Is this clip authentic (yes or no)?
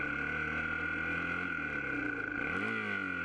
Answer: yes